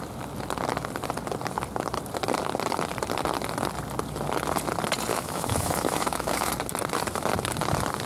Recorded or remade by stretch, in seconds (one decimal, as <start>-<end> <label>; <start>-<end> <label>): 0.0-5.1 recorded; 5.1-6.5 remade; 6.5-8.1 recorded